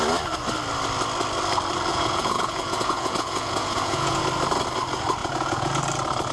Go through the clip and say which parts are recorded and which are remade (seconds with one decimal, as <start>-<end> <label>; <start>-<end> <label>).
0.0-1.9 recorded; 1.9-4.2 remade; 4.2-5.2 recorded; 5.2-5.8 remade; 5.8-6.3 recorded